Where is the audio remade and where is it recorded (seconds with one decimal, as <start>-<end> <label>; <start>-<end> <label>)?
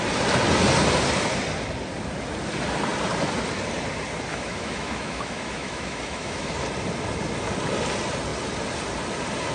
0.0-4.3 recorded; 4.3-6.5 remade; 6.5-9.5 recorded